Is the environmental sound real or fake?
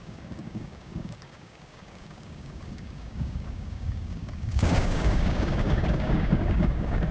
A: fake